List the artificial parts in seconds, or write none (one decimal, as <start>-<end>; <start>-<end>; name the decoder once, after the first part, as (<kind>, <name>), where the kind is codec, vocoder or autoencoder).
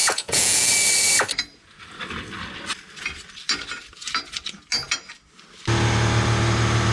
0.0-0.7 (vocoder, Vocos)